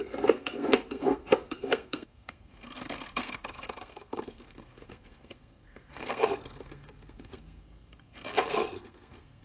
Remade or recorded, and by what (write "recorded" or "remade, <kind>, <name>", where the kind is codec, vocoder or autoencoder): remade, codec, SNAC